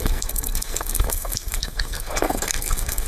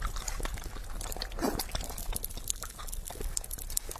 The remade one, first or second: first